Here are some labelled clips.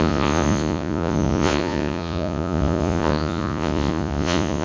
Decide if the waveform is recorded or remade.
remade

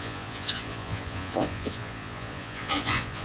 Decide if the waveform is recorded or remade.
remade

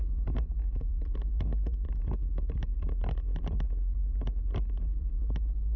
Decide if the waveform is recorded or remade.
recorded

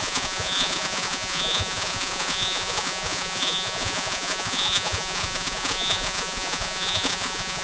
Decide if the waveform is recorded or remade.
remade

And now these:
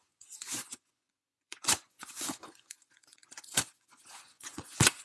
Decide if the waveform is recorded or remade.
remade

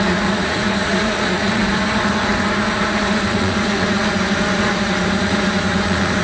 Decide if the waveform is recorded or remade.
remade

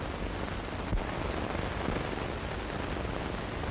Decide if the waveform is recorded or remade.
recorded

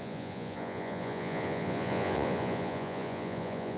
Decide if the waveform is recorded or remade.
remade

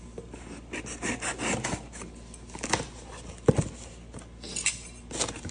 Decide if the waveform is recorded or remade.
recorded